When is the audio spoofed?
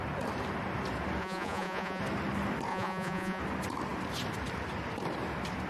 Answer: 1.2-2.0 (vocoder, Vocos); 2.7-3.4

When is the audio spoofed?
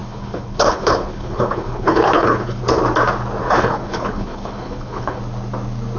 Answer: 0.0-2.6 (codec, HILCodec); 3.4-5.2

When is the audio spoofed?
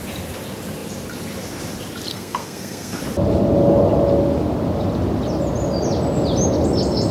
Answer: 2.1-3.0 (codec, SNAC)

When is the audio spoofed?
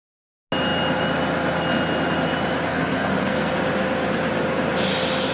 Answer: 2.7-3.5 (codec, SNAC)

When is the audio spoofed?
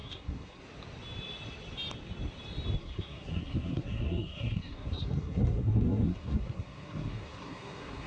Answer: 0.0-0.6 (codec, SNAC); 2.8-8.1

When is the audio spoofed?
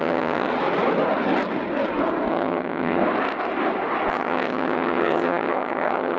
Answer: 0.0-0.5 (vocoder, HiFi-GAN); 2.3-3.0; 4.1-6.2